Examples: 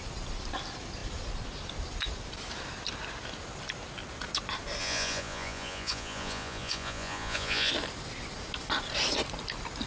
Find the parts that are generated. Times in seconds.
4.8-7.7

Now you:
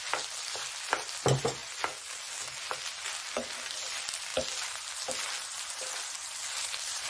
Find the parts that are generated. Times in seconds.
6.4-7.1

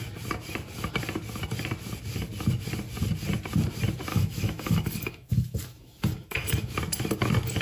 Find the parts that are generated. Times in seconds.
4.1-6.6

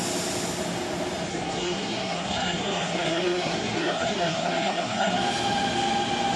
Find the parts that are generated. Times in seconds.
1.3-5.1

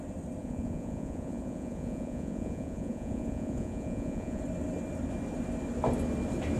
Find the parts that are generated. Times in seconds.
0.4-4.4

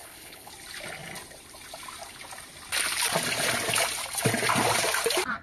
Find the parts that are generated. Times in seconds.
0.0-0.5